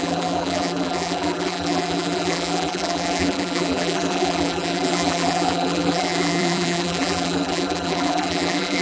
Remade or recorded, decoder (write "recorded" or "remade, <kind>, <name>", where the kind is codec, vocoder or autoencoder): remade, vocoder, BigVGAN v2